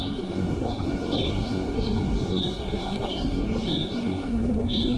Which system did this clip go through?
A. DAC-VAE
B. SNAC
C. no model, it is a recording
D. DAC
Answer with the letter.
B